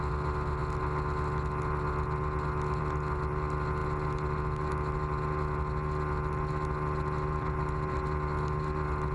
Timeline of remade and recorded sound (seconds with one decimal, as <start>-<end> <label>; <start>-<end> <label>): 0.0-9.1 recorded